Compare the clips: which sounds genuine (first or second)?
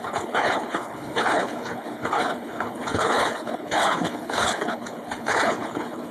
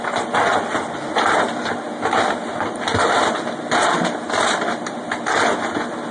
second